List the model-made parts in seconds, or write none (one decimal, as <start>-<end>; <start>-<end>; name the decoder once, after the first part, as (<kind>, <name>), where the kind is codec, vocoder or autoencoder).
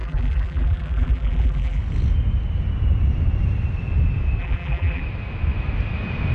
0.0-1.8 (vocoder, BigVGAN v2); 4.4-5.0